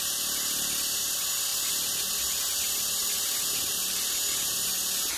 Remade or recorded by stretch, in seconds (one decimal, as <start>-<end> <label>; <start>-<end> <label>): 0.0-5.2 recorded